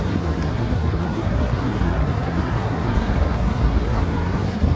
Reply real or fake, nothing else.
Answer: fake